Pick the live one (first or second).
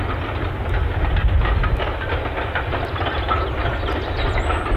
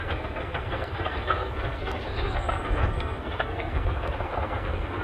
first